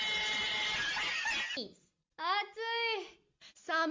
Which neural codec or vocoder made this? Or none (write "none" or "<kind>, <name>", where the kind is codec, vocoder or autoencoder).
none